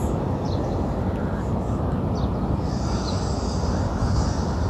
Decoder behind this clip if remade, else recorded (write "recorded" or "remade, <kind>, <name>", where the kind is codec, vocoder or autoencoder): recorded